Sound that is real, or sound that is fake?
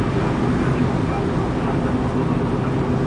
real